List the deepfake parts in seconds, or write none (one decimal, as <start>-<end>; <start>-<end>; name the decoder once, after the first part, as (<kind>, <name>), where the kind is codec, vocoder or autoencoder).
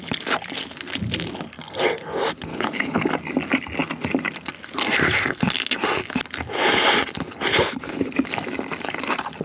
2.5-3.1 (codec, HILCodec); 7.5-8.1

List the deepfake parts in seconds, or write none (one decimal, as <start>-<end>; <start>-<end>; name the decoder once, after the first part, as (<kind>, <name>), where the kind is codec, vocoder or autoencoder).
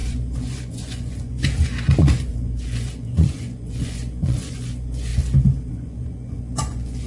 0.0-5.1 (vocoder, Vocos); 5.7-7.1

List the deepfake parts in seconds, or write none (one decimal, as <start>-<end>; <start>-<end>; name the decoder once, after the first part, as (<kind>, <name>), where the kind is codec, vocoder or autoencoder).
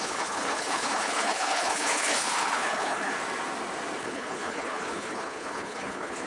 0.0-3.1 (codec, HILCodec); 4.0-6.3